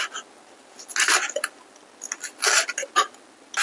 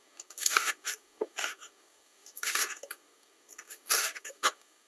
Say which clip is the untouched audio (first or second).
first